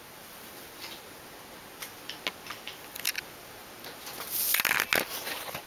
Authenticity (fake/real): real